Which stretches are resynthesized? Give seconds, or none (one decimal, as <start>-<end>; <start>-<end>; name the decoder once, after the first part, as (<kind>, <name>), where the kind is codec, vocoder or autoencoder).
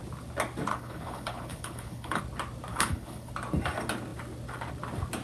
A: 0.7-2.2 (codec, HILCodec); 2.7-3.3